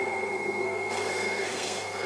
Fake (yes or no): yes